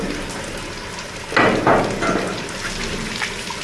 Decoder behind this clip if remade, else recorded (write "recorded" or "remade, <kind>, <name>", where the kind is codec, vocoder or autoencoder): recorded